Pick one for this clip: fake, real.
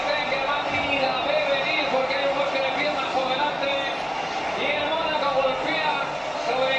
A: real